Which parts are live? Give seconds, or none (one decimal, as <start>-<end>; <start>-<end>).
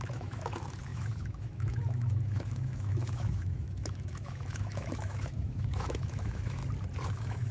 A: 6.6-7.1